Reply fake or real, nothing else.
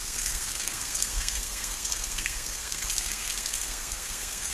fake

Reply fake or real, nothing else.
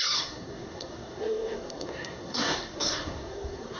fake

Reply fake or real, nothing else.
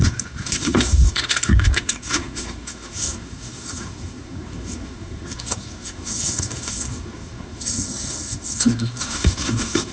fake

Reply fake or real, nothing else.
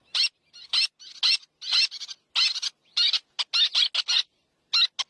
real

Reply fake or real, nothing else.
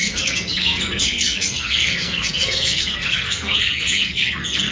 fake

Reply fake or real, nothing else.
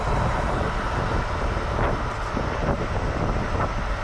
real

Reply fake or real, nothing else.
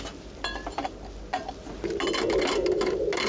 real